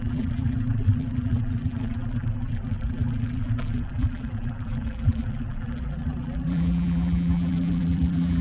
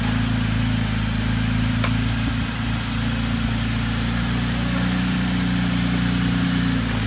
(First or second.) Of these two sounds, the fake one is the first